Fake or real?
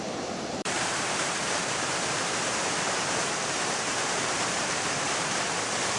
fake